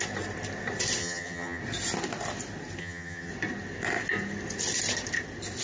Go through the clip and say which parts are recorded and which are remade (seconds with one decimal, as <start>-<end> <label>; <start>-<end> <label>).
0.0-1.0 recorded; 1.0-1.6 remade; 1.6-2.8 recorded; 2.8-3.3 remade; 3.3-5.6 recorded